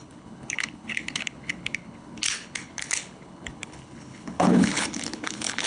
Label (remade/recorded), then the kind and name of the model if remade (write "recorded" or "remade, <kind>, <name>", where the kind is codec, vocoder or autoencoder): remade, codec, HILCodec